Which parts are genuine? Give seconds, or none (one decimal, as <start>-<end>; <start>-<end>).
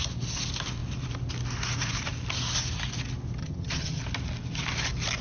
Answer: 0.0-3.4; 4.0-5.2